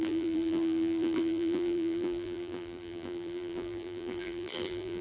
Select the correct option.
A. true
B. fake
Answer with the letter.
B